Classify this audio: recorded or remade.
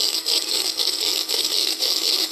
remade